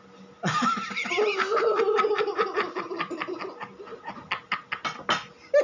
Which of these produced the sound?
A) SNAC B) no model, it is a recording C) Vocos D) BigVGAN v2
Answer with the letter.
B